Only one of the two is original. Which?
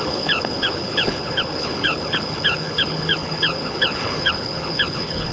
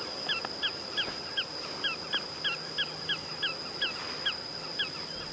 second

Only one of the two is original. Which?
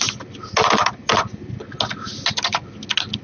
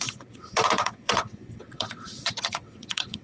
first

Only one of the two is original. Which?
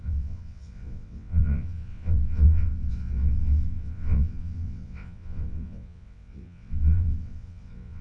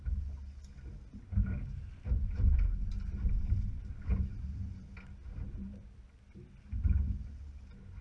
second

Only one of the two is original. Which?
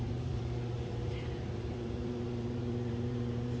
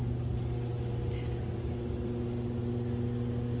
second